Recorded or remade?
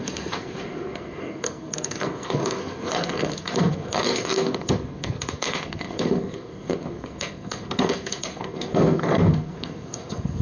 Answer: remade